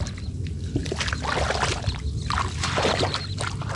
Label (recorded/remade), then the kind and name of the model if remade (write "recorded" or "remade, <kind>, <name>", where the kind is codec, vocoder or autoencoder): recorded